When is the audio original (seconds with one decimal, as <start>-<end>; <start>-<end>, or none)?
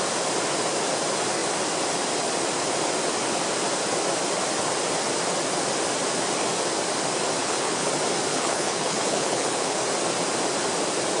0.0-7.4; 7.9-8.3; 9.8-11.2